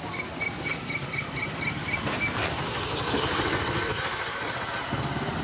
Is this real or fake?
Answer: real